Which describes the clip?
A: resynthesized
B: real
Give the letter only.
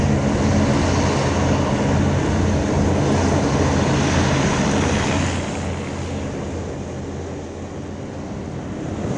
B